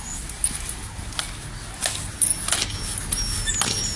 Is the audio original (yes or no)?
yes